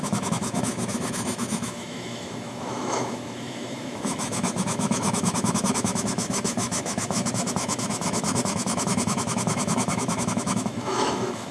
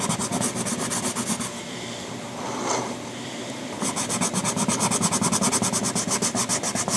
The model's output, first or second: first